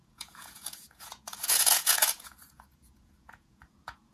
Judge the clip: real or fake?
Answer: fake